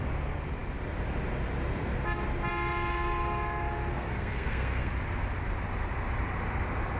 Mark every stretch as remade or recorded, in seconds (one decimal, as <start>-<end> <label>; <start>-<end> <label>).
0.0-3.9 recorded; 3.9-4.9 remade; 4.9-7.0 recorded